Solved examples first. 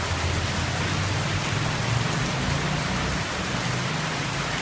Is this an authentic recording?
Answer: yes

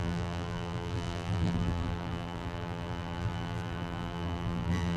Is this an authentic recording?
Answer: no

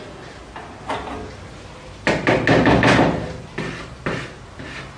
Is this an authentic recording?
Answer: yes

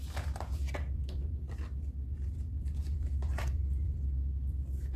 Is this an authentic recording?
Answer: no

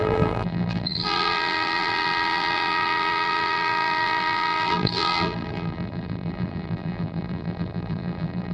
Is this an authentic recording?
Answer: no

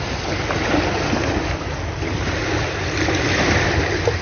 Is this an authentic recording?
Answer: yes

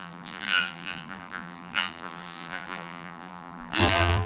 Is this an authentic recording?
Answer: no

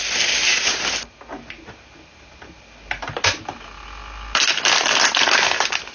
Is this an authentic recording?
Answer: yes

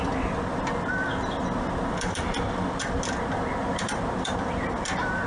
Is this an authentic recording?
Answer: no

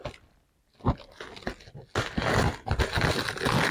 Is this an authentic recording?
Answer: yes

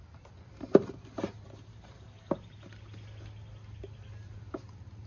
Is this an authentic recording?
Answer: yes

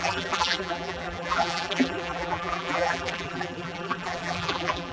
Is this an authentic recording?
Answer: no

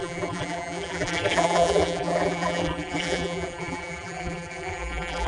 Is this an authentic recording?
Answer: no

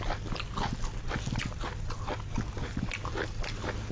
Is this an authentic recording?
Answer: yes